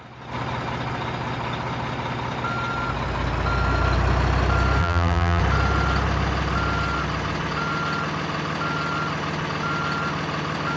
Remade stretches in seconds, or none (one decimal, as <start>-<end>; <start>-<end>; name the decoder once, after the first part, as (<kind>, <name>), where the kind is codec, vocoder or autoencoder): 4.8-5.4 (vocoder, BigVGAN v2)